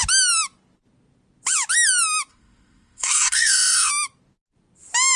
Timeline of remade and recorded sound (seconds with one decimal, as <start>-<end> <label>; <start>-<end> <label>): 0.0-2.3 recorded; 2.3-3.9 remade; 3.9-5.2 recorded